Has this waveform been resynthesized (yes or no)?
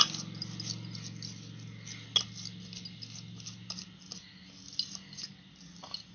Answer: no